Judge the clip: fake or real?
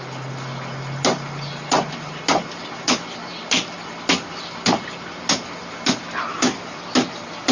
real